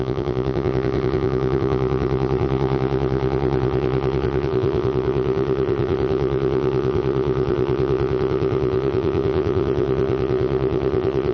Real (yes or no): no